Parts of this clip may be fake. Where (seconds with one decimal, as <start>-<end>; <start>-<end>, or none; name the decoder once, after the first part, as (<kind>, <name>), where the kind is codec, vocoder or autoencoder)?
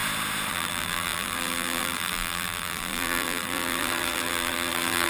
0.5-5.1 (vocoder, BigVGAN v2)